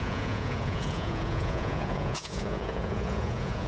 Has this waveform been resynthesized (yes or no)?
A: yes